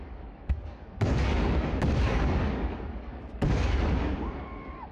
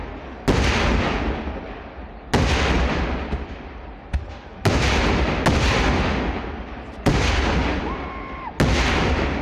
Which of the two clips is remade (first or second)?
first